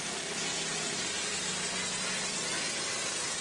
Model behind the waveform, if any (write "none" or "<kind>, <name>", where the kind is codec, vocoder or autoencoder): none